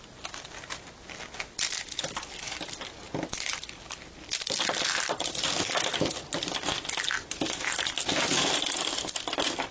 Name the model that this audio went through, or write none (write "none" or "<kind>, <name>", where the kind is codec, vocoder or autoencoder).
none